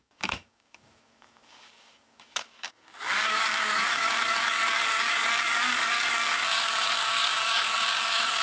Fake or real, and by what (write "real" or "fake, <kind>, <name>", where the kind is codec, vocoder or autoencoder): fake, codec, DAC